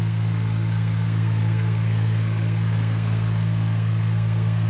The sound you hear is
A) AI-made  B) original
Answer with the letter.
A